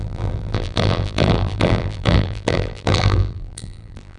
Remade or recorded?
remade